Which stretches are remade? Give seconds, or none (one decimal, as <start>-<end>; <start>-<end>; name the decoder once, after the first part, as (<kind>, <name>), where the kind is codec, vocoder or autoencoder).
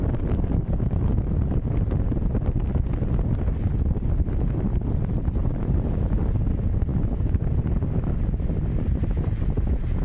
5.4-6.2 (vocoder, BigVGAN v2)